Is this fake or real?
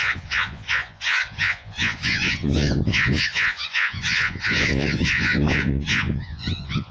fake